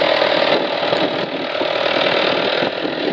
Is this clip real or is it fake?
real